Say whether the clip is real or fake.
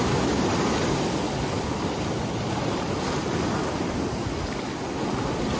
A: real